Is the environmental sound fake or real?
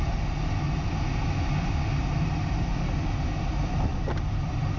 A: real